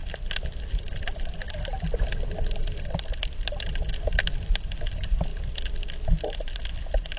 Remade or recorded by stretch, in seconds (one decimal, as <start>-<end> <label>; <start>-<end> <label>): 0.0-7.2 recorded